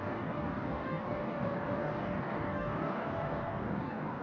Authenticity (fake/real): fake